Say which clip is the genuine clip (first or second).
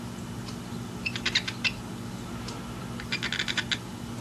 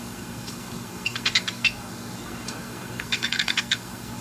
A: first